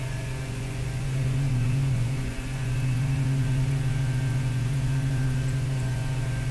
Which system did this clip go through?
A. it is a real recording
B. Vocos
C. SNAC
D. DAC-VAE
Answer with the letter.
B